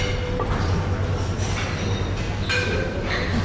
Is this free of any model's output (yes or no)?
yes